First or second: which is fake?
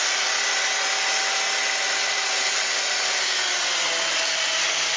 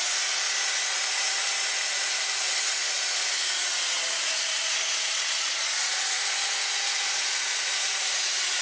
second